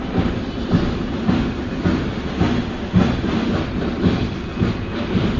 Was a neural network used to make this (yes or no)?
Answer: no